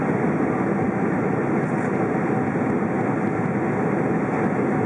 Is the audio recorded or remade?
recorded